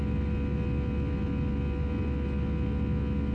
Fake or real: real